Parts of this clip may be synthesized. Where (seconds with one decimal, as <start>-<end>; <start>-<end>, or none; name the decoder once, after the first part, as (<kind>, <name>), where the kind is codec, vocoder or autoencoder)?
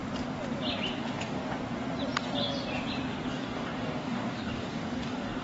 1.0-1.4 (codec, DAC); 3.3-5.4